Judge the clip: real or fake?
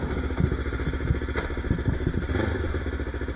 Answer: real